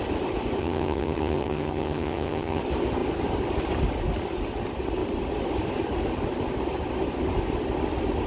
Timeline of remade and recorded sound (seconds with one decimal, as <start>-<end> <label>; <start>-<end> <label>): 0.0-0.6 recorded; 0.6-2.6 remade; 2.6-8.3 recorded